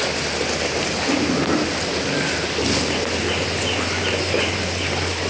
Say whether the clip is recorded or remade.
recorded